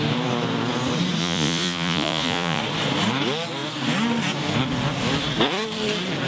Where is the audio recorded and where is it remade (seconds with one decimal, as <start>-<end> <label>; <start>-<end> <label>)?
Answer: 0.0-1.2 recorded; 1.2-2.6 remade; 2.6-6.3 recorded